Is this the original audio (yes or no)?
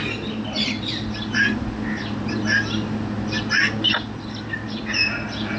yes